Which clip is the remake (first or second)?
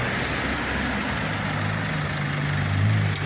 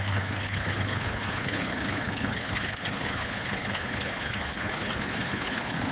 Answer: second